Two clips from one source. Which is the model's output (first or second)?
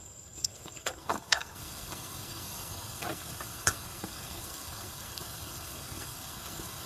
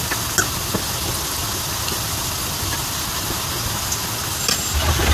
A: first